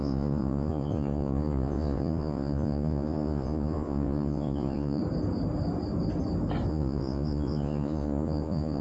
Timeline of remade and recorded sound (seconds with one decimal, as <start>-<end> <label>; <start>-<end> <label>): 0.0-5.0 remade; 5.0-6.7 recorded; 6.7-8.8 remade